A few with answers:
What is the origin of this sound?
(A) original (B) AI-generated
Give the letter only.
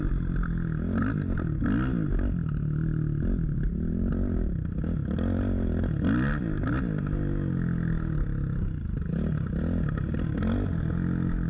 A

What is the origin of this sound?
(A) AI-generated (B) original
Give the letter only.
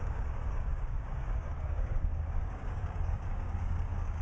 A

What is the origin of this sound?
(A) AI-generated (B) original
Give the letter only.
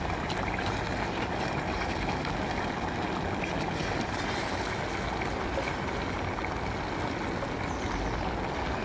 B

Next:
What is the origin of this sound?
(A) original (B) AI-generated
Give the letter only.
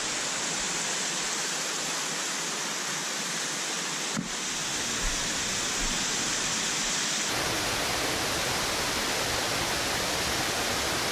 A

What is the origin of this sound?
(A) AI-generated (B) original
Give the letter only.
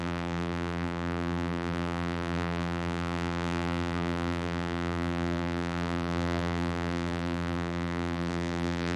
A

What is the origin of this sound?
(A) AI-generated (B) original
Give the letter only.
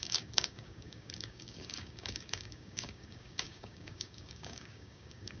A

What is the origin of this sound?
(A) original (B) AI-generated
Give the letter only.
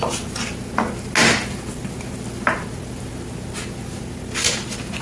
A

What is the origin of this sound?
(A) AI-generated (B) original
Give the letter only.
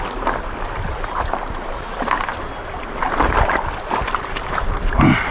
B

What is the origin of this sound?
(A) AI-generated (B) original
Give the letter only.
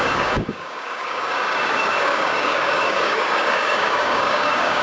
A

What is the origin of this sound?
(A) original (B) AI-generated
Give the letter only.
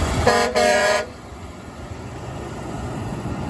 B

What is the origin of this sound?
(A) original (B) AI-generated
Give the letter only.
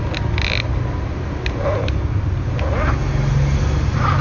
A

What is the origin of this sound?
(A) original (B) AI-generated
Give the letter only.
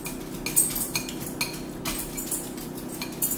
A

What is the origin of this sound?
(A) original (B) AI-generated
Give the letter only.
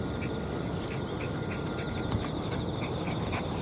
A